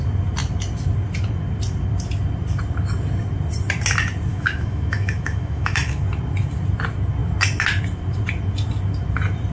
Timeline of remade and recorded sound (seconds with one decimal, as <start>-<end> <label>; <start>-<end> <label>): 0.0-4.3 recorded; 4.3-6.0 remade; 6.0-9.5 recorded

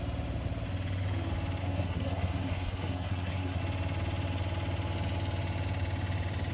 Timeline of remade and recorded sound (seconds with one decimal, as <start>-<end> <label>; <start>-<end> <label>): 0.0-1.6 recorded; 1.6-3.6 remade; 3.6-6.5 recorded

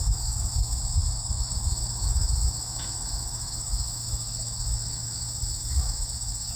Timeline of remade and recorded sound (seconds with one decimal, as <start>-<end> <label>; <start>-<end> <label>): 0.0-6.6 remade

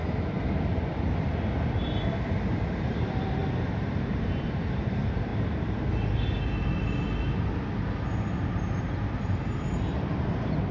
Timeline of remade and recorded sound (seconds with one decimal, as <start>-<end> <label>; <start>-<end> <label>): 0.0-2.5 recorded; 2.5-5.3 remade; 5.3-8.5 recorded; 8.5-10.7 remade

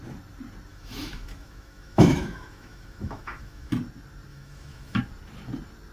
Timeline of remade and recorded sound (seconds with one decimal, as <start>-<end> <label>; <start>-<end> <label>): 0.0-0.7 recorded; 0.7-3.7 remade; 3.7-4.3 recorded; 4.3-5.0 remade; 5.0-5.9 recorded